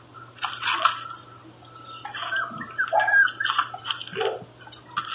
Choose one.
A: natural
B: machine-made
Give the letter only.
A